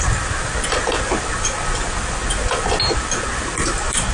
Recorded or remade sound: recorded